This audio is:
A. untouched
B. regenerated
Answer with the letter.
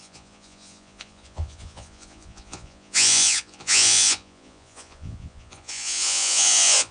B